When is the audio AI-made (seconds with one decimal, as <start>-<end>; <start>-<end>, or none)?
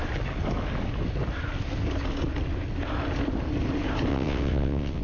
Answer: 4.1-5.0